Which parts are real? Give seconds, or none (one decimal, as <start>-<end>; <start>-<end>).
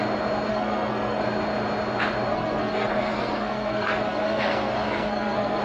0.0-0.5; 1.2-2.3